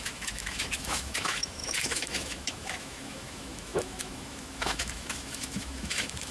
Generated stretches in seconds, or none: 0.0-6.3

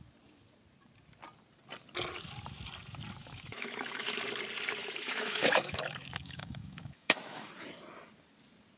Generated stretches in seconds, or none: 3.2-4.2; 4.8-7.5

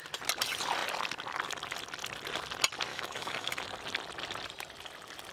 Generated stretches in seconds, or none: 2.9-3.6

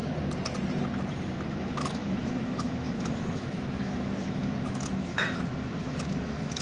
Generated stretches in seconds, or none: 1.5-6.6

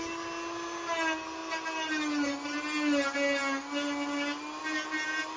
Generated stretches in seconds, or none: none

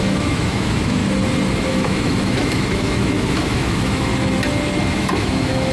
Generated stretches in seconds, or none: 0.0-1.0; 1.7-4.1; 4.9-5.7

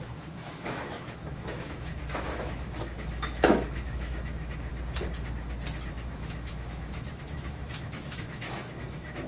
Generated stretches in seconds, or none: 0.0-4.7; 5.9-9.3

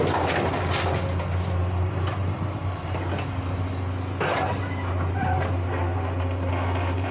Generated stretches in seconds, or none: none